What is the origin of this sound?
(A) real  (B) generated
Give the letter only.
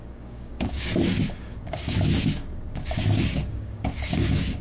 B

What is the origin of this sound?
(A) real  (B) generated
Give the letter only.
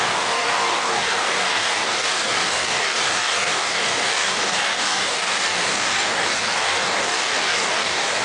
B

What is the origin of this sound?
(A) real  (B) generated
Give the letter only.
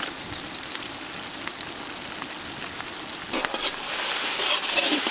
A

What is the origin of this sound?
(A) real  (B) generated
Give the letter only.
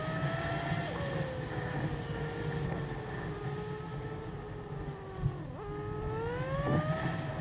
A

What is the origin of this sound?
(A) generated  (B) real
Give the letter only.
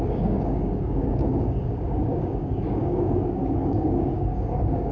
A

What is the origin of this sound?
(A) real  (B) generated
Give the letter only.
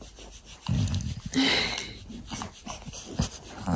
A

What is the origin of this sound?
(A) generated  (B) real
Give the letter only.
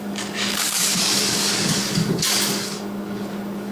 A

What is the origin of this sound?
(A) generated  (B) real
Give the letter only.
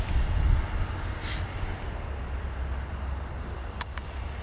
B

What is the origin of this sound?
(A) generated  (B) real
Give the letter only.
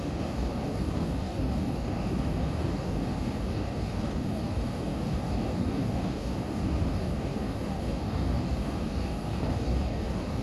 A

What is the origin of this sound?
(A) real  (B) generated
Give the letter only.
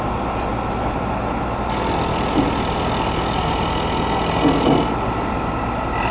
A